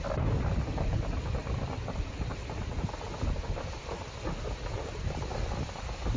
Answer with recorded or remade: recorded